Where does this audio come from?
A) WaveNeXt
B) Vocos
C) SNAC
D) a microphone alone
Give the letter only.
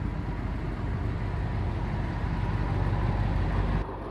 D